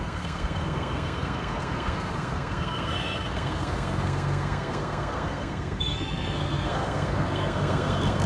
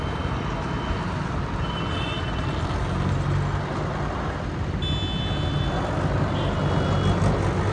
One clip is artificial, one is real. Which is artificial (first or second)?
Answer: first